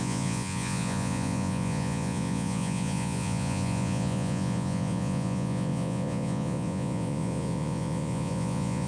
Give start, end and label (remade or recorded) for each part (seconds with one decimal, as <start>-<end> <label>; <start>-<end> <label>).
0.0-8.9 remade